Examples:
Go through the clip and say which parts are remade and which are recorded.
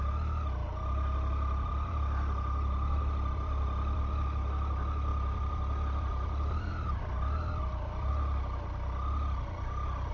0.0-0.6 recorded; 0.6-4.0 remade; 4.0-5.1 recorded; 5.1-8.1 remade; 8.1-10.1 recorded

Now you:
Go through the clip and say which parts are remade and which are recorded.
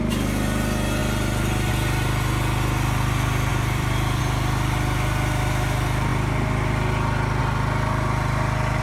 0.0-1.0 recorded; 1.0-1.7 remade; 1.7-3.5 recorded; 3.5-4.2 remade; 4.2-8.8 recorded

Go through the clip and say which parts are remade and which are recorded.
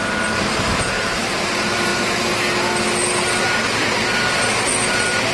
0.0-0.9 recorded; 0.9-1.9 remade; 1.9-5.3 recorded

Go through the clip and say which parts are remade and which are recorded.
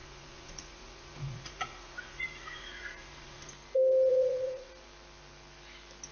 0.0-3.5 remade; 3.5-4.1 recorded; 4.1-4.7 remade; 4.7-6.1 recorded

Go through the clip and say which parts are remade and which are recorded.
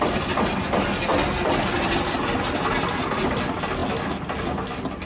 0.0-5.1 recorded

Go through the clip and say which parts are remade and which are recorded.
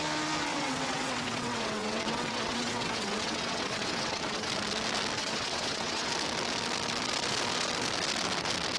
0.0-0.5 recorded; 0.5-4.5 remade; 4.5-5.2 recorded; 5.2-6.1 remade; 6.1-8.8 recorded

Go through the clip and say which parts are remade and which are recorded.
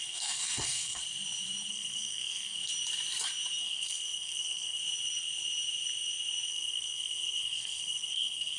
0.0-1.0 remade; 1.0-1.7 recorded; 1.7-2.6 remade; 2.6-3.6 recorded; 3.6-4.8 remade; 4.8-6.5 recorded; 6.5-8.6 remade